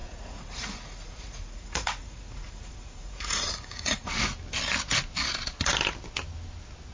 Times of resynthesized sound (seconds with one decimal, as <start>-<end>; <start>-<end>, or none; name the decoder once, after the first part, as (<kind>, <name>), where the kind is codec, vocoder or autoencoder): 0.0-4.1 (vocoder, Vocos)